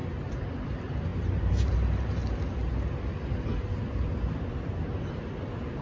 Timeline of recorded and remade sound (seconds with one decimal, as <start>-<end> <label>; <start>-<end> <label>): 0.0-2.2 remade; 2.2-4.5 recorded; 4.5-5.8 remade